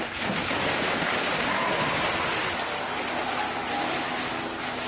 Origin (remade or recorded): recorded